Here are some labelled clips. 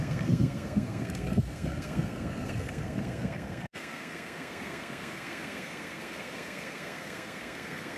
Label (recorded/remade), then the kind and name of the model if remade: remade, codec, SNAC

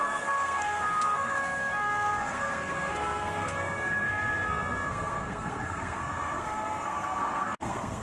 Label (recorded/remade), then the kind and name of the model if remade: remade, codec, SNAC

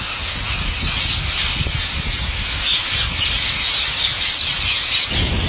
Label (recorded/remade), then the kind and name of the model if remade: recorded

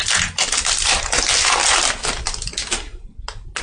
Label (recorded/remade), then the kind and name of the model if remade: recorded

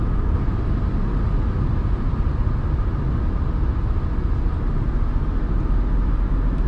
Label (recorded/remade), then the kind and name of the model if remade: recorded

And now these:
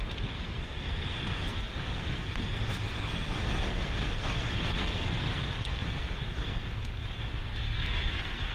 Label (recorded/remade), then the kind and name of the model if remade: remade, codec, SNAC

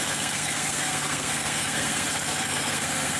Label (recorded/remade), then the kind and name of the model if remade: remade, codec, SNAC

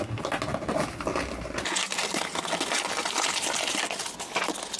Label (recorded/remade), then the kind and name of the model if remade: recorded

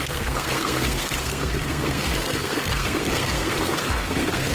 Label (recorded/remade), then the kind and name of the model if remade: remade, codec, SNAC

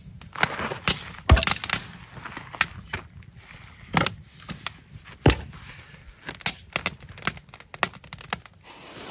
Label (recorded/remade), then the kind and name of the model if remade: recorded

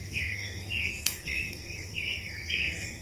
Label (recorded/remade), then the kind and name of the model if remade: remade, codec, SNAC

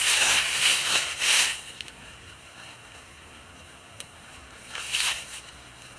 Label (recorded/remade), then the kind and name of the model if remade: remade, codec, SNAC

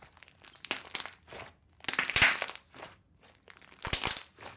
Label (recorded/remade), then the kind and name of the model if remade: recorded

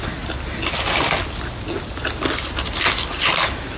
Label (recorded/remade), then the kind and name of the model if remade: recorded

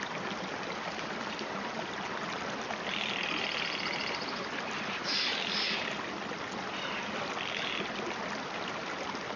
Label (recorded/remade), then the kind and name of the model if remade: recorded